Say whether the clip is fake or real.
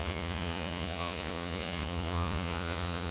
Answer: fake